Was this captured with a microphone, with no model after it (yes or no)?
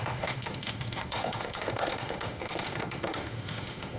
no